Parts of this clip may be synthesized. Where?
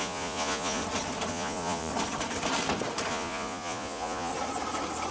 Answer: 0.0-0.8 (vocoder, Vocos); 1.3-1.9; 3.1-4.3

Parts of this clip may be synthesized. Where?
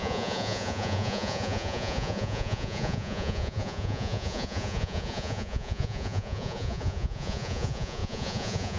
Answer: 0.0-8.8 (vocoder, Vocos)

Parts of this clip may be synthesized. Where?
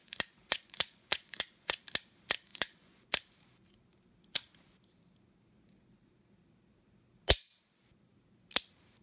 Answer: 0.0-1.8 (vocoder, Vocos); 2.5-3.1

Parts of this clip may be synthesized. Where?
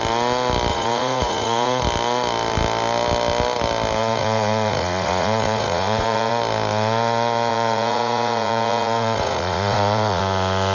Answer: 0.7-1.8 (vocoder, Vocos); 4.0-6.3; 7.5-10.2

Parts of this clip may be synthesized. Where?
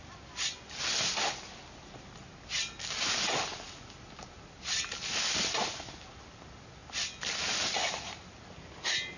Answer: none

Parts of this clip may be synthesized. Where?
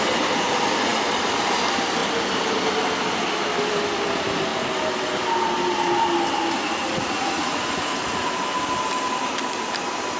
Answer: 6.8-8.3 (vocoder, Vocos)